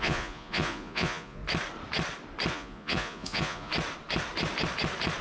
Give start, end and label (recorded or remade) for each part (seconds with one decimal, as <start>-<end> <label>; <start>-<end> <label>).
0.0-1.4 remade; 1.4-2.5 recorded; 2.5-3.7 remade; 3.7-5.2 recorded